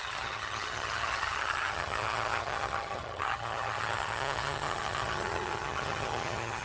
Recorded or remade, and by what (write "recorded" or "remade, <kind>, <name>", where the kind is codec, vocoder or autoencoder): remade, vocoder, HiFi-GAN